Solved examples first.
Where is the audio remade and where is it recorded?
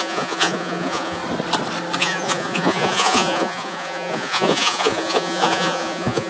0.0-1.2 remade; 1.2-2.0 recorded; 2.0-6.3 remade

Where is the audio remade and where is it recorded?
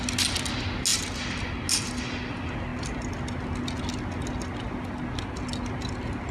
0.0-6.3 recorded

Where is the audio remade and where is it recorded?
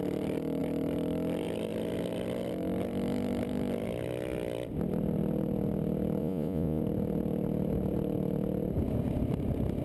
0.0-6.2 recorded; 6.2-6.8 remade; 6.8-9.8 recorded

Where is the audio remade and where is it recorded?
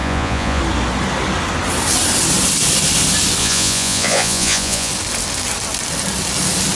0.0-0.6 remade; 0.6-3.4 recorded; 3.4-4.9 remade; 4.9-6.7 recorded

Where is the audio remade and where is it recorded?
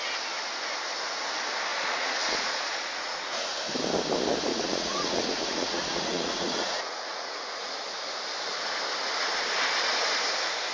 0.0-1.7 recorded; 1.7-3.6 remade; 3.6-4.5 recorded; 4.5-7.8 remade; 7.8-10.7 recorded